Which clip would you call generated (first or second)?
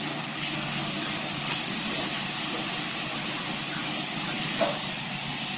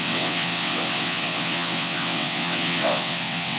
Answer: second